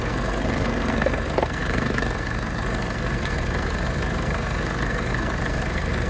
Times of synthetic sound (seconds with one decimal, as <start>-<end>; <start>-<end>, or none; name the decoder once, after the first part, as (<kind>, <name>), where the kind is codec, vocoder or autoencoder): 0.0-6.1 (codec, SNAC)